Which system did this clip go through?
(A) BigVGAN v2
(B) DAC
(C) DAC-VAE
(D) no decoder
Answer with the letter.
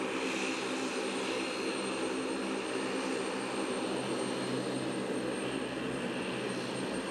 D